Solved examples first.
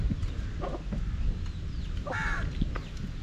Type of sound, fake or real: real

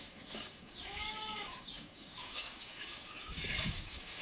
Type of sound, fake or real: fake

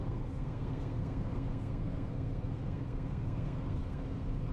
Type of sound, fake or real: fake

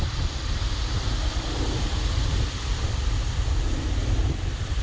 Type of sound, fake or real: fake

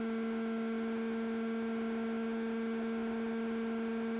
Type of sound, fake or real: real